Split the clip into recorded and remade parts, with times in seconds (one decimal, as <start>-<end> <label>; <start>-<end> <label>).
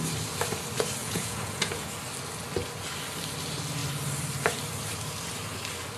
0.0-1.0 recorded; 1.0-1.9 remade; 1.9-6.0 recorded